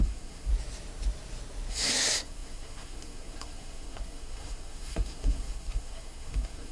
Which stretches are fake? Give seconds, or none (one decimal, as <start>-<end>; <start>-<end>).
0.0-0.5; 1.7-6.7